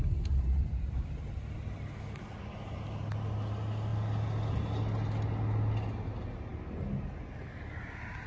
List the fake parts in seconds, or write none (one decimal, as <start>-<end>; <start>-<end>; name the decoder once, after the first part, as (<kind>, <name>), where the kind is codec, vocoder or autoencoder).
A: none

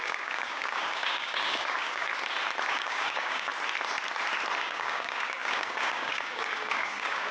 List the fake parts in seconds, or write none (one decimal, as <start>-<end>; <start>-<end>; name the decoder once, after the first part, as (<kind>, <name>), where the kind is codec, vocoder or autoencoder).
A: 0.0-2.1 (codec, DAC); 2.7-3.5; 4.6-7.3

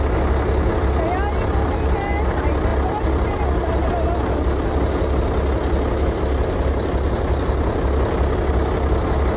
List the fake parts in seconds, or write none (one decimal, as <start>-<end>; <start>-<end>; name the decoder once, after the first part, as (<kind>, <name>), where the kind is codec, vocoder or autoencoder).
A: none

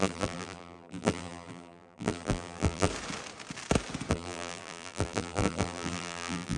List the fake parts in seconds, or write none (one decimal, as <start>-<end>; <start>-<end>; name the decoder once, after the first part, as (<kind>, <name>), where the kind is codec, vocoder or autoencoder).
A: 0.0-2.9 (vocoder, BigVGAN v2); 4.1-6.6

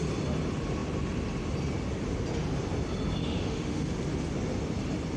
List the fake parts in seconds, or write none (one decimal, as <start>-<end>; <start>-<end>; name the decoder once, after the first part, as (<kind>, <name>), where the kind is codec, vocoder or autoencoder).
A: 3.2-3.9 (autoencoder, DAC-VAE)

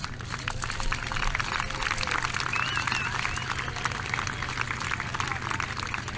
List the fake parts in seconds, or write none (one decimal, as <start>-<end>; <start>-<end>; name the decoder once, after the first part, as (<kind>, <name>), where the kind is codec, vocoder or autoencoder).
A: none

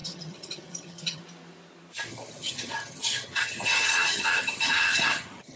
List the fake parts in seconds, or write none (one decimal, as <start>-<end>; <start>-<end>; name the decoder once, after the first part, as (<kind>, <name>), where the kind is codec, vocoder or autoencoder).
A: 0.0-1.2 (vocoder, HiFi-GAN); 2.1-5.6

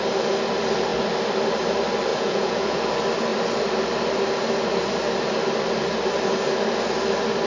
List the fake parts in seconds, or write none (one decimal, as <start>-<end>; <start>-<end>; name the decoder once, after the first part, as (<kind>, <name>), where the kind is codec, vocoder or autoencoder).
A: 2.1-2.8 (vocoder, Vocos)